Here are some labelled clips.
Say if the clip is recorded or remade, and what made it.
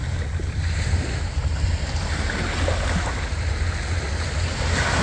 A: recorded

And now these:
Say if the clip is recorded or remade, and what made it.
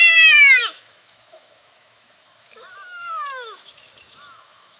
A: remade, autoencoder, DAC-VAE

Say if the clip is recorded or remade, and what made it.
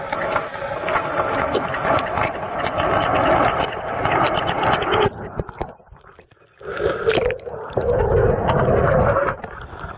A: recorded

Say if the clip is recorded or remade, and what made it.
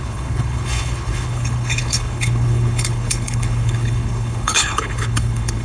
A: remade, codec, HILCodec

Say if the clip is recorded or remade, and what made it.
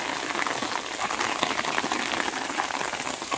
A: recorded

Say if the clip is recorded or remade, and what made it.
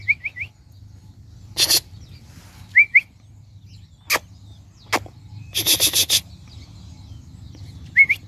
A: recorded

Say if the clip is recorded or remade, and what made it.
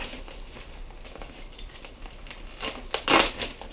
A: recorded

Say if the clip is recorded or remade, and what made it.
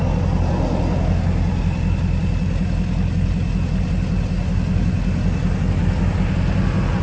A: recorded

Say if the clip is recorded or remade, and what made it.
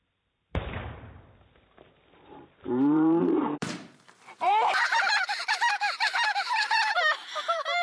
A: remade, vocoder, BigVGAN v2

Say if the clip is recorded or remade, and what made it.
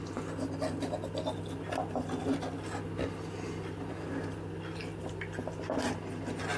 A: recorded